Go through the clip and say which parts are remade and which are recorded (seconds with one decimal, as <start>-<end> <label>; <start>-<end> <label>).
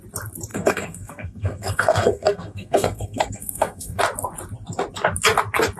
0.0-0.5 recorded; 0.5-4.0 remade; 4.0-5.8 recorded